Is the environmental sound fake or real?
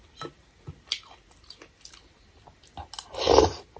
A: real